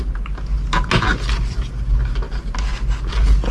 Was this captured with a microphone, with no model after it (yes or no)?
yes